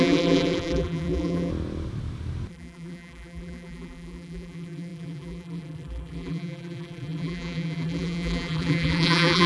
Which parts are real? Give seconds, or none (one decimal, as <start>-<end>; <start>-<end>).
1.5-2.5